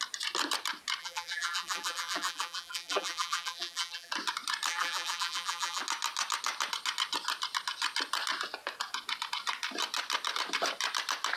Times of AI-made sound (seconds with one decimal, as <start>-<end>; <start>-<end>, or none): 1.0-4.1; 4.7-5.8